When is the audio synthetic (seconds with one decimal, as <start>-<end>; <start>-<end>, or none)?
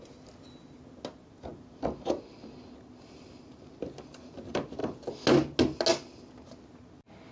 none